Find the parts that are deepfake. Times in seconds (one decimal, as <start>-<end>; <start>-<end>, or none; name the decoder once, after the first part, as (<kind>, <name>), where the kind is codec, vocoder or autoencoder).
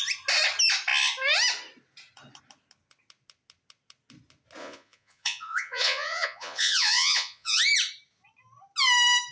4.6-7.6 (vocoder, Vocos)